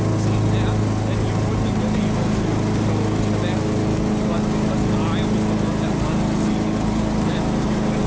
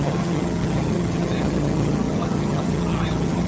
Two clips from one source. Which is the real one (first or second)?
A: first